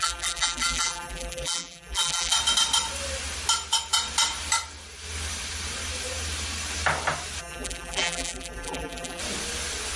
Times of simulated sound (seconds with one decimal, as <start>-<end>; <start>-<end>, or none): 0.0-2.3; 7.4-9.2